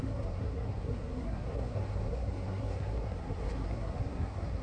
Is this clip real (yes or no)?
no